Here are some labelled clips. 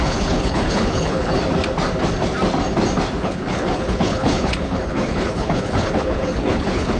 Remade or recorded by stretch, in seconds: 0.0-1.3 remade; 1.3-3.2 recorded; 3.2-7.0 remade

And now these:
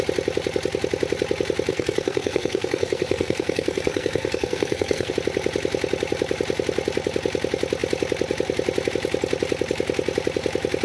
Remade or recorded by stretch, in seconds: 0.0-1.7 recorded; 1.7-5.1 remade; 5.1-10.8 recorded

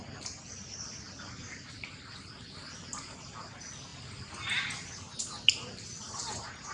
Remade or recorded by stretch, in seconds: 0.0-3.9 remade; 3.9-6.7 recorded

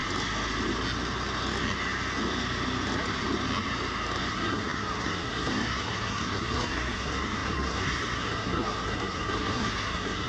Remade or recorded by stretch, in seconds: 0.0-4.3 recorded; 4.3-10.3 remade

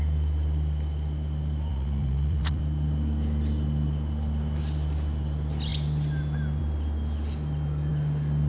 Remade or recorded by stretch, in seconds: 0.0-1.7 recorded; 1.7-2.6 remade; 2.6-8.5 recorded